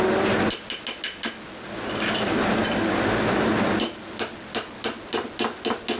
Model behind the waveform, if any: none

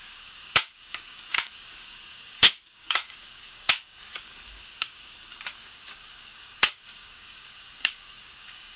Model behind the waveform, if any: codec, DAC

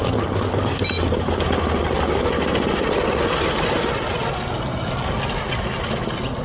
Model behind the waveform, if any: none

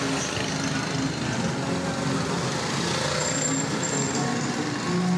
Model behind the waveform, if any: none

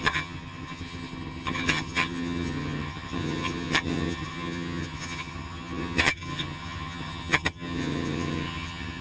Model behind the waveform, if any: vocoder, HiFi-GAN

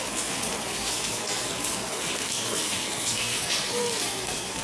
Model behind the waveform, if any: codec, SNAC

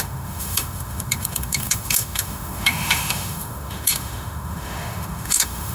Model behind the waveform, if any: autoencoder, DAC-VAE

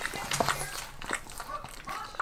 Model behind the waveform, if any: none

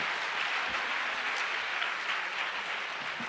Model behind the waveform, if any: none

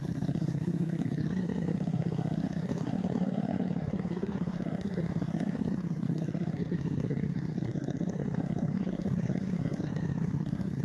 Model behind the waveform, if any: codec, SNAC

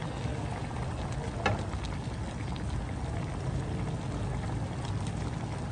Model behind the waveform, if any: none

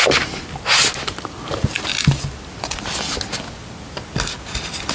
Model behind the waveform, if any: none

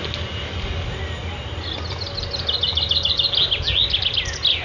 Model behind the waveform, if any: none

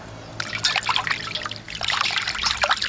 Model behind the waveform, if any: none